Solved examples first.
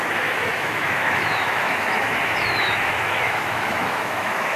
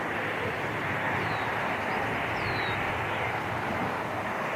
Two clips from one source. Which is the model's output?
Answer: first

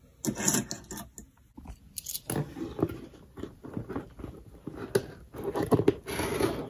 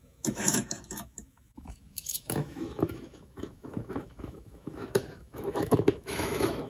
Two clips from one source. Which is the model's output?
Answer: second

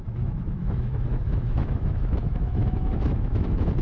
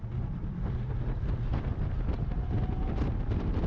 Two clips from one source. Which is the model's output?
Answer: first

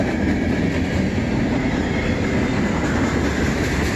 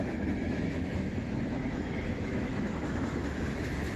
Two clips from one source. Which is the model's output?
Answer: second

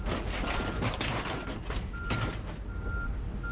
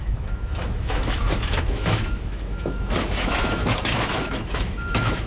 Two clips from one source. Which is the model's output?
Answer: second